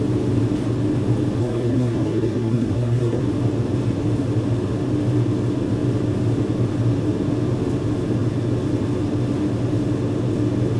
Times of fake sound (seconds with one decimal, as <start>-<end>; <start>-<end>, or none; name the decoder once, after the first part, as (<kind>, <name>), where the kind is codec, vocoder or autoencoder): 1.4-3.2 (codec, SNAC)